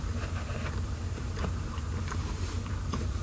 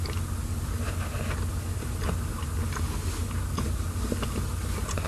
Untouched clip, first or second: second